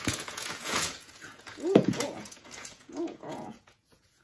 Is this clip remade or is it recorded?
remade